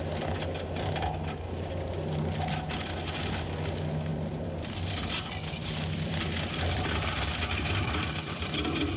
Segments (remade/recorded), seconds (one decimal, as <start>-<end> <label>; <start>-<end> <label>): 0.0-4.1 recorded; 4.1-6.2 remade; 6.2-9.0 recorded